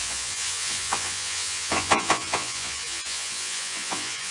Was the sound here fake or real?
fake